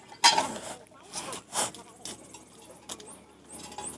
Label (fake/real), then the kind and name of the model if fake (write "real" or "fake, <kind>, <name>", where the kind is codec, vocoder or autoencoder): real